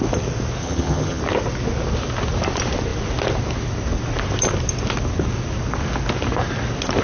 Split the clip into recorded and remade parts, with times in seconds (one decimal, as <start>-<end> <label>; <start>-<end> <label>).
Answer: 0.0-0.6 recorded; 0.6-1.2 remade; 1.2-7.0 recorded